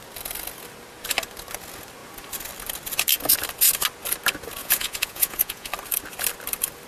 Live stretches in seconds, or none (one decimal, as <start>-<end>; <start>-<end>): 0.0-4.6; 5.7-6.9